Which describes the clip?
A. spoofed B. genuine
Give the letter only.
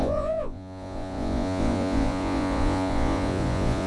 A